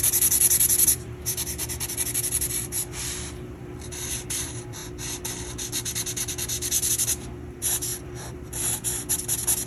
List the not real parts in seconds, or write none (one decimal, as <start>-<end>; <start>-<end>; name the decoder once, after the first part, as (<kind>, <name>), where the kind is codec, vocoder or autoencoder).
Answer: 0.0-4.8 (vocoder, BigVGAN v2); 6.9-9.7